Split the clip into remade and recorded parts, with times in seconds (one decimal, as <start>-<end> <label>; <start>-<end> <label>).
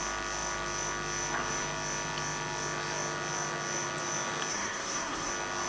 0.0-4.5 recorded; 4.5-5.3 remade; 5.3-5.7 recorded